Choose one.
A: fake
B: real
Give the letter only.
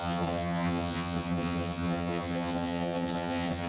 A